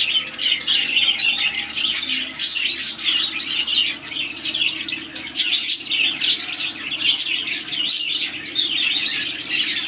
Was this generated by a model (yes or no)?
no